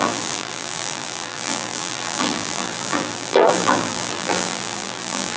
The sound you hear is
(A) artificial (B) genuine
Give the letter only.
A